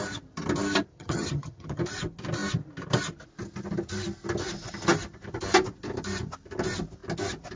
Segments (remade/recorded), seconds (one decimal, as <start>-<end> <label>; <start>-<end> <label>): 0.0-0.9 recorded; 0.9-1.8 remade; 1.8-7.6 recorded